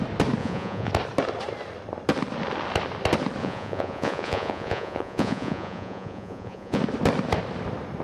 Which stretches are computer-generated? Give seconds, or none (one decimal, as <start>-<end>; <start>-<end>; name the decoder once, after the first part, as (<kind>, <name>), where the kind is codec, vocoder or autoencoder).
0.4-0.9 (vocoder, Vocos); 3.4-6.8